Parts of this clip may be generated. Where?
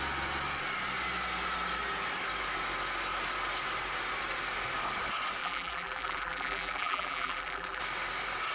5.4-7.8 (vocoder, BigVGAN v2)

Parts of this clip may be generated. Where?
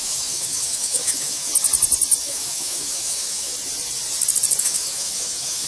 0.0-1.5 (autoencoder, DAC-VAE); 2.2-3.5; 4.6-5.7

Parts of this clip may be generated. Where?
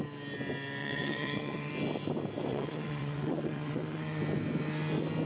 0.8-1.7 (vocoder, WaveNeXt); 2.5-4.2